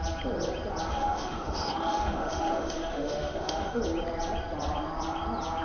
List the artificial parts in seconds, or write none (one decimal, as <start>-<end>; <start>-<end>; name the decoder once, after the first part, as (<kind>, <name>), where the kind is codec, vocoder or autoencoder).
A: 0.9-3.8 (autoencoder, DAC-VAE)